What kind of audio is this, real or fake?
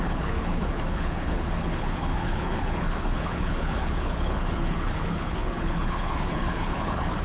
fake